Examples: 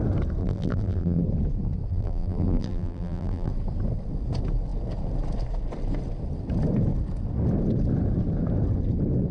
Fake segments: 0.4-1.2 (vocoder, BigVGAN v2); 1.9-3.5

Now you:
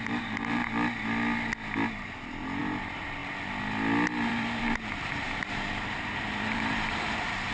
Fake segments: 0.0-0.6 (vocoder, BigVGAN v2); 2.6-3.2; 4.3-7.5